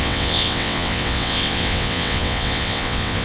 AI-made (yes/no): yes